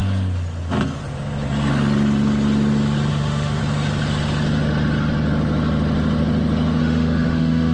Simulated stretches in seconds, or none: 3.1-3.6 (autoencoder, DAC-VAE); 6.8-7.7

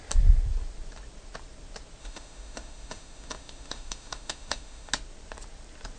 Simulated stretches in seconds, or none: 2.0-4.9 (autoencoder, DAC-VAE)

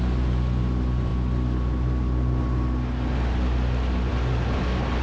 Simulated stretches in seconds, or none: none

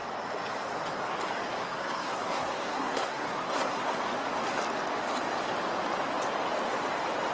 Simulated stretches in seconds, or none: 1.6-4.0 (codec, SNAC)

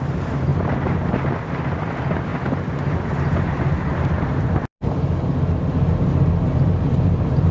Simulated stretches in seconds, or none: 0.0-0.5 (vocoder, BigVGAN v2); 1.1-7.5